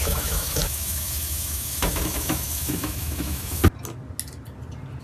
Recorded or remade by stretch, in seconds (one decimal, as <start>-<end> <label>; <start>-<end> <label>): 0.0-3.6 remade; 3.6-5.0 recorded